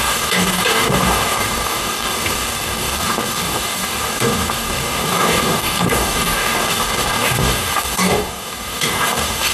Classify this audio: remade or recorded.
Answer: remade